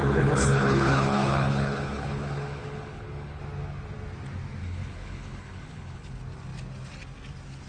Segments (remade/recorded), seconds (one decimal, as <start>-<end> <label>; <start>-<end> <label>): 0.0-3.4 remade; 3.4-4.6 recorded; 4.6-6.1 remade; 6.1-7.7 recorded